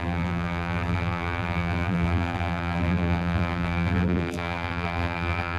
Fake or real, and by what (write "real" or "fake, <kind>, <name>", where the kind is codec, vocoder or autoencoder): fake, vocoder, BigVGAN v2